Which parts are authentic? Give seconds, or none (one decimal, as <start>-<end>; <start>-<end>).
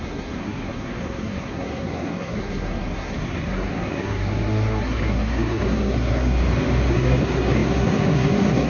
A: 6.4-6.9